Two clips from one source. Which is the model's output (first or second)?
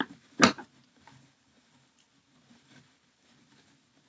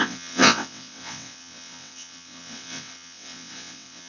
second